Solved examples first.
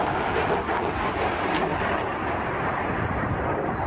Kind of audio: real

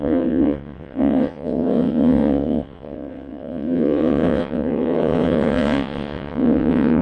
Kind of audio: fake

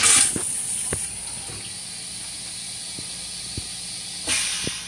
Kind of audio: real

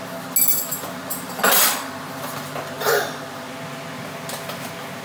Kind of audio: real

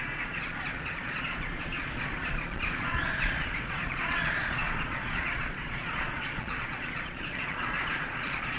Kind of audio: fake